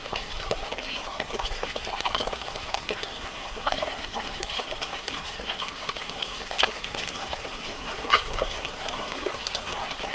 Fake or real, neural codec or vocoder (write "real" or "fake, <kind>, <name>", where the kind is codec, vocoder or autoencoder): fake, codec, SNAC